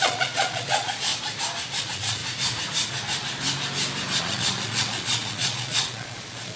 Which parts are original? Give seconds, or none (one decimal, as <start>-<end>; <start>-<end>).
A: 1.1-1.8; 2.2-4.2